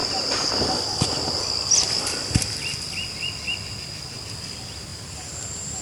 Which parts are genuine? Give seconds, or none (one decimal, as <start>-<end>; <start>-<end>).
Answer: 0.5-4.9